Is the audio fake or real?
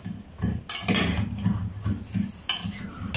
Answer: real